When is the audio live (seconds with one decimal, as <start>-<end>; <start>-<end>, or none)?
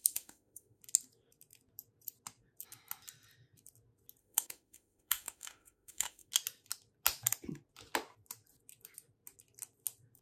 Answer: 0.8-4.2; 6.3-10.2